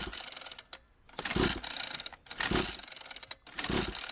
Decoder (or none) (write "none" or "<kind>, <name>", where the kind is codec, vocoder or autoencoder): none